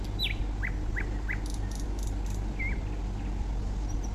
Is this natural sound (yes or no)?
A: yes